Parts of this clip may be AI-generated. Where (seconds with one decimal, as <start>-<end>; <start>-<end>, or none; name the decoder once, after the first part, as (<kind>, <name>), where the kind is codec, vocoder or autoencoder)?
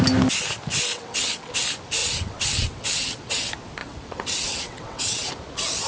0.9-1.5 (vocoder, WaveNeXt); 2.0-3.4; 3.8-5.3